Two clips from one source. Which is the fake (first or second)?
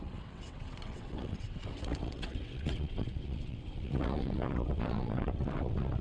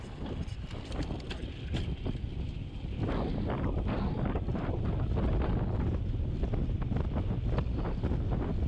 first